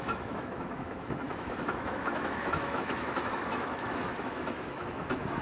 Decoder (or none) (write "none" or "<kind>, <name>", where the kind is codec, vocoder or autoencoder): autoencoder, DAC-VAE